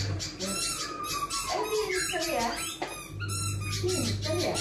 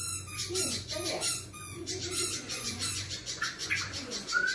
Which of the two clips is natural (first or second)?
first